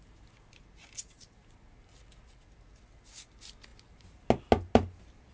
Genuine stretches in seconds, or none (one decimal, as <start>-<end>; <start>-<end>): 0.0-5.3